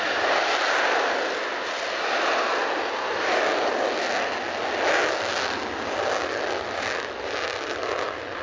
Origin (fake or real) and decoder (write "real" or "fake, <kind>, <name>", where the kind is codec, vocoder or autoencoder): real